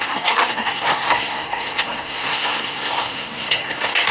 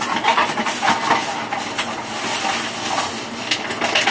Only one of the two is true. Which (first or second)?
second